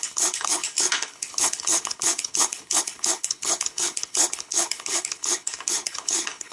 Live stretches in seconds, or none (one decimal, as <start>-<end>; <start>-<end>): none